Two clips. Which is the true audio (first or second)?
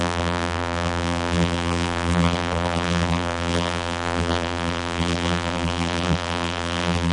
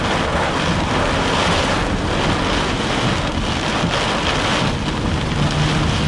second